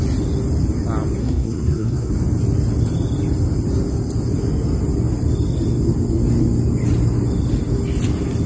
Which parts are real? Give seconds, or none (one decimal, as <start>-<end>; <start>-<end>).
0.0-1.2; 2.1-8.5